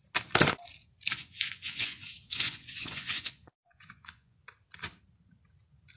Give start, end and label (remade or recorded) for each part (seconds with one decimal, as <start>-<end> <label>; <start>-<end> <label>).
0.0-1.2 recorded; 1.2-4.4 remade; 4.4-6.0 recorded